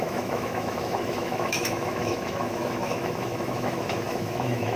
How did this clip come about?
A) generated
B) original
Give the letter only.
A